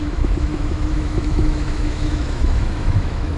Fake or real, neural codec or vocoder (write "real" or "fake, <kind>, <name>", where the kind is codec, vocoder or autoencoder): fake, autoencoder, DAC-VAE